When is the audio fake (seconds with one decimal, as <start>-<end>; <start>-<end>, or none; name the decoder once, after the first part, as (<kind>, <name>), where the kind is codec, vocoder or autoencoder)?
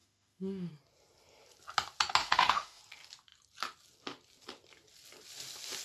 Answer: 0.0-0.7 (autoencoder, DAC-VAE); 2.2-2.8